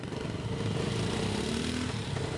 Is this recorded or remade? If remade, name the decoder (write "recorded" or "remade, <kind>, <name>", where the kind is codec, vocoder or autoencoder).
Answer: recorded